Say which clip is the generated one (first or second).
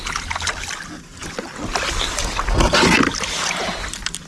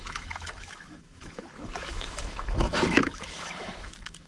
second